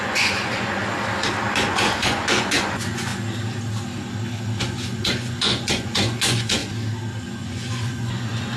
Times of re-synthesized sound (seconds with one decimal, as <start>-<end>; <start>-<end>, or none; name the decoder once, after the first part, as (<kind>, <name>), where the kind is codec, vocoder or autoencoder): 0.0-0.8 (vocoder, Vocos); 1.6-3.1; 4.6-6.6; 7.2-8.6